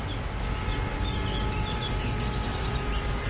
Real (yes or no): yes